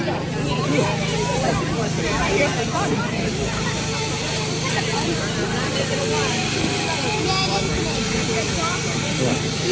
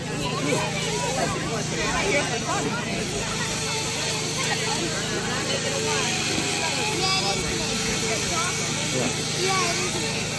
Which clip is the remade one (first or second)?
first